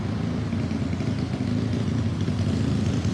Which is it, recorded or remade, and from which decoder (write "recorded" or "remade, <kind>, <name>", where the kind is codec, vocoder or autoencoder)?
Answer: recorded